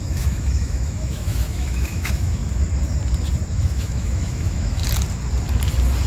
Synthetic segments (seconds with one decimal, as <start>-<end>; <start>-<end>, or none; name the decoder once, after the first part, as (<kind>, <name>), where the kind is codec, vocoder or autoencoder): 0.0-2.4 (autoencoder, DAC-VAE); 3.5-4.8